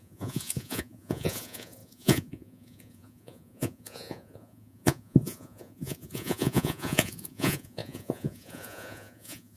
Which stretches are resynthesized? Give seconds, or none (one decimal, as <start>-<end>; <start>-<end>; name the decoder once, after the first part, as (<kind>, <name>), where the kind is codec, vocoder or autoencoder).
0.0-9.6 (vocoder, Vocos)